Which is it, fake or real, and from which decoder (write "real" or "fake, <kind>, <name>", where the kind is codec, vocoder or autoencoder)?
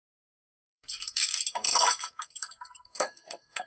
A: fake, codec, SNAC